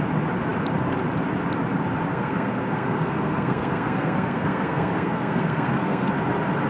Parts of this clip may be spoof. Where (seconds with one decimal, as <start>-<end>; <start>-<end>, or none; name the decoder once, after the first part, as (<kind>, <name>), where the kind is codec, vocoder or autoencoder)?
2.1-6.1 (codec, SNAC)